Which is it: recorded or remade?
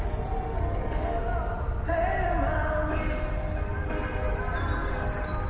recorded